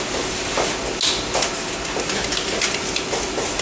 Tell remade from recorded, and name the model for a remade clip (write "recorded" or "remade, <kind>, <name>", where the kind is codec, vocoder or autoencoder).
recorded